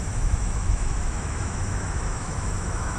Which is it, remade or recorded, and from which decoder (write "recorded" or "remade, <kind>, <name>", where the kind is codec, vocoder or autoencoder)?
remade, autoencoder, DAC-VAE